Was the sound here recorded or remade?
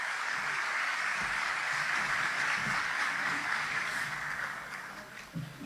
remade